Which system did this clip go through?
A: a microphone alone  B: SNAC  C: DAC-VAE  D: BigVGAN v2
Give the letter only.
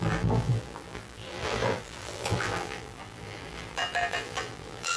D